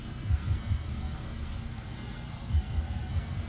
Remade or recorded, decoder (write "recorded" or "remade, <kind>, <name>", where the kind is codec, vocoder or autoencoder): remade, codec, SNAC